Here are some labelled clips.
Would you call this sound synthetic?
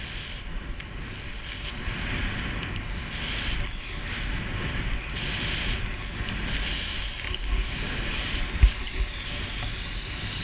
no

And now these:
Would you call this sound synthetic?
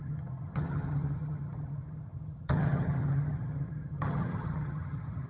yes